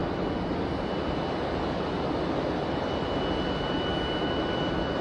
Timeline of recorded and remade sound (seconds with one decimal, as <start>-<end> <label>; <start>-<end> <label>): 0.0-5.0 recorded